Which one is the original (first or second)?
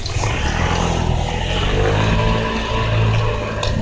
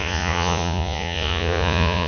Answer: first